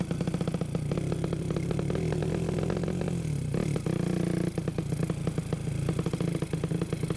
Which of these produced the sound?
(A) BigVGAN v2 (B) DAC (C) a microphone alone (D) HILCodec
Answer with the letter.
C